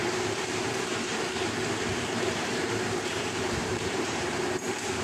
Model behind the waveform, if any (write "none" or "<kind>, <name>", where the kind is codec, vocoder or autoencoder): vocoder, BigVGAN v2